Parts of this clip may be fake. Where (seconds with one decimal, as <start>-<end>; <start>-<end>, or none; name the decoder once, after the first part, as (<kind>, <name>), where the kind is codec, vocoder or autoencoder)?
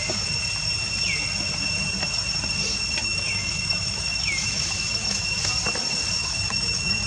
3.0-5.4 (autoencoder, DAC-VAE); 6.2-7.1